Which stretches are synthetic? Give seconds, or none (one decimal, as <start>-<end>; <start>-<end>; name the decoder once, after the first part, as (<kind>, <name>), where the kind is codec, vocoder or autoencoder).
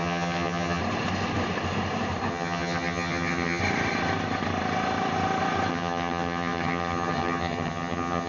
0.0-0.8 (vocoder, HiFi-GAN); 2.3-3.6; 5.7-8.3